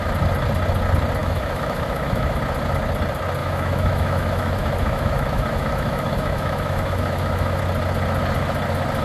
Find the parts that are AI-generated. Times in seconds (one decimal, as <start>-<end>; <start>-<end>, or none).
1.2-2.4; 3.4-7.6